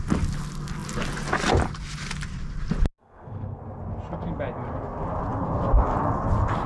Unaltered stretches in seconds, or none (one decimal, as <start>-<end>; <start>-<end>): 0.0-3.0; 3.6-6.7

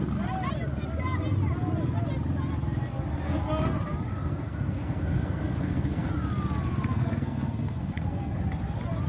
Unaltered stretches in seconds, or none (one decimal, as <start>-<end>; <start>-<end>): 0.0-4.1; 6.1-6.9; 8.4-9.1

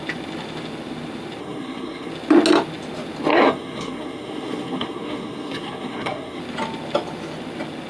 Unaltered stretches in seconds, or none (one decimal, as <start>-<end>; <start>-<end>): 0.0-1.4; 2.1-3.3; 6.4-7.9

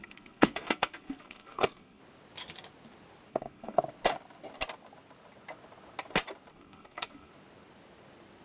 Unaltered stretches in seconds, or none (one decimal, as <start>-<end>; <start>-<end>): 2.0-3.3; 3.8-6.5; 7.3-8.4

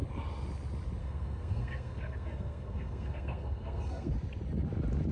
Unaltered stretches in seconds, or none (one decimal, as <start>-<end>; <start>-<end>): 0.0-1.0; 4.1-5.1

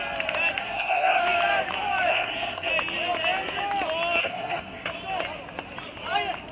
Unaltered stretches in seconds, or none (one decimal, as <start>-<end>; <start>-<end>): 0.0-0.6; 1.2-2.1; 2.7-4.2; 4.9-6.5